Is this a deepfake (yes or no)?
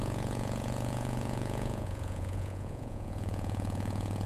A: yes